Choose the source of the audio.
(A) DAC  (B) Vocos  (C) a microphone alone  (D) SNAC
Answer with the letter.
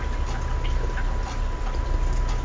C